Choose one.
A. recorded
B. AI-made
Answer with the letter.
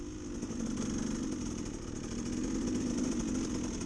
A